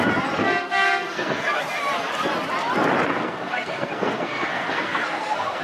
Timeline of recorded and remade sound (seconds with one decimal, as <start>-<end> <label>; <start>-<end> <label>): 0.0-0.4 recorded; 0.4-1.6 remade; 1.6-3.1 recorded; 3.1-5.6 remade

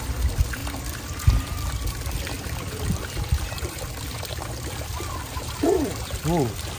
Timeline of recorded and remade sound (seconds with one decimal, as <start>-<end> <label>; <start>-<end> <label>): 0.0-0.6 remade; 0.6-2.1 recorded; 2.1-6.8 remade